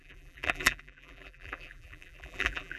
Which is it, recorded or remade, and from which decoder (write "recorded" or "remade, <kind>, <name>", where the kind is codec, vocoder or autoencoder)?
remade, vocoder, BigVGAN v2